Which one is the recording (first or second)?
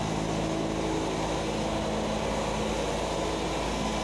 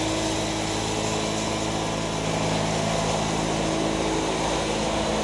first